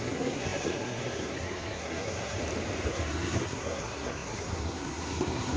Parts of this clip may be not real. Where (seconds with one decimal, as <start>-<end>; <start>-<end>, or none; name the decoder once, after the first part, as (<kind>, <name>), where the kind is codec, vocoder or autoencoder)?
0.0-2.4 (codec, SNAC); 2.9-5.6